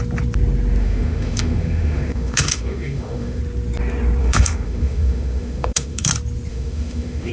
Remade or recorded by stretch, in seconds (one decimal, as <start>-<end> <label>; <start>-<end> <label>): 0.0-0.8 recorded; 0.8-3.4 remade; 3.4-4.2 recorded; 4.2-6.1 remade; 6.1-6.5 recorded; 6.5-7.3 remade